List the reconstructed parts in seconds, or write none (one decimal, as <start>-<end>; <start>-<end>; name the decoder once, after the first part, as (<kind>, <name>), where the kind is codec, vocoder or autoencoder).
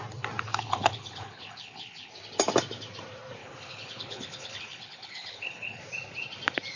0.5-2.1 (codec, HILCodec); 3.4-5.8